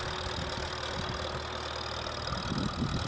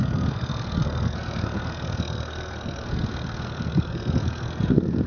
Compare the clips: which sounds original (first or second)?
first